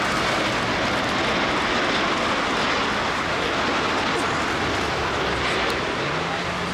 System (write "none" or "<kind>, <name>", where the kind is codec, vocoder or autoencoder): none